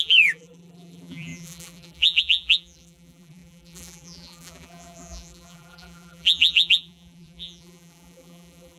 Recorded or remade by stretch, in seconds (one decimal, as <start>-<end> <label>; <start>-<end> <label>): 0.0-8.8 remade